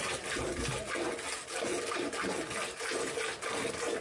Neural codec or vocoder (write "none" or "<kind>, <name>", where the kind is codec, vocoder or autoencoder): none